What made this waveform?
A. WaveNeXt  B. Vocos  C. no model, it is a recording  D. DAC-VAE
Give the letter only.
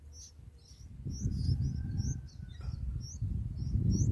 C